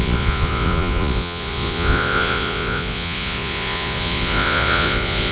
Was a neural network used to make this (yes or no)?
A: yes